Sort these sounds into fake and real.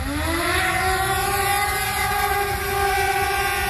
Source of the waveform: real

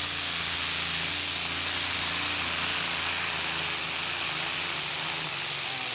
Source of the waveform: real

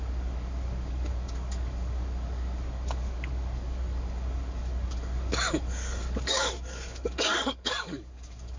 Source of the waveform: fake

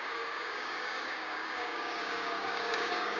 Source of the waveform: fake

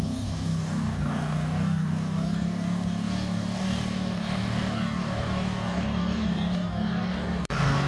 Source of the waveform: fake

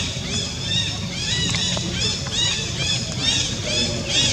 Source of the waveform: real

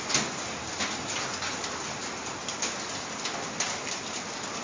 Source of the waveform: real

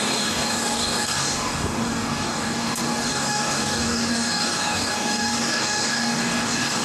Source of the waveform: fake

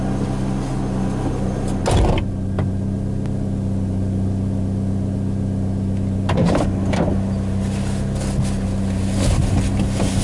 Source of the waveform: real